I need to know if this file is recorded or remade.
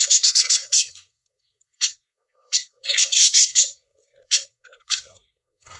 remade